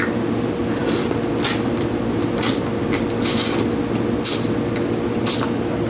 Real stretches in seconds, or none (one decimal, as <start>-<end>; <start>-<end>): 0.0-5.9